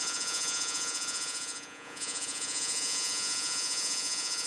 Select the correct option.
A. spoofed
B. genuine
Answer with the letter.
A